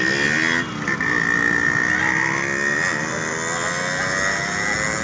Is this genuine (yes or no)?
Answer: yes